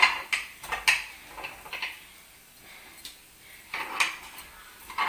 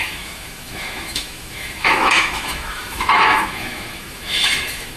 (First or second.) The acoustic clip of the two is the first